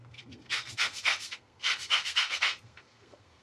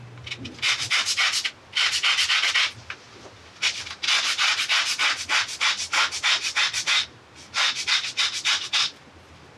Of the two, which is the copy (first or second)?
first